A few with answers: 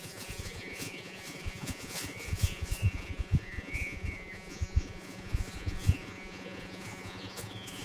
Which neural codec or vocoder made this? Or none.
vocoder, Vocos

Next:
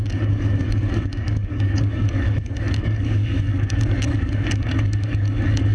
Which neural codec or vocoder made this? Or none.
codec, DAC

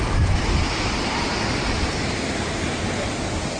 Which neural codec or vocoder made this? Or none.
none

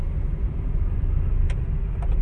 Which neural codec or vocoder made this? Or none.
none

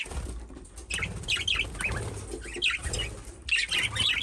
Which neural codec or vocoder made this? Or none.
none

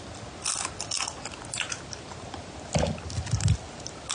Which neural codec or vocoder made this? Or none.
none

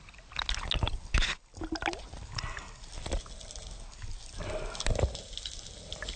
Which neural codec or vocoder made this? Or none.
none